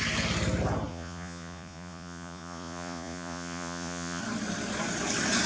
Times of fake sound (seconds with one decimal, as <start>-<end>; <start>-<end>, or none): 0.9-4.2